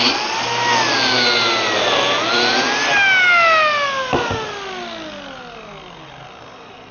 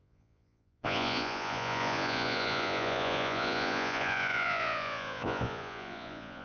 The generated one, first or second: second